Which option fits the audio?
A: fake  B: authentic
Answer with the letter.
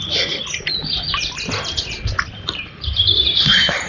B